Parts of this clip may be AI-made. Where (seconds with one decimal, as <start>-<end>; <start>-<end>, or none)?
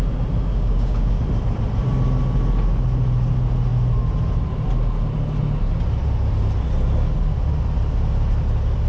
0.5-1.2